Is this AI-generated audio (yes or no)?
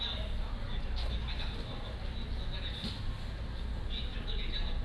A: no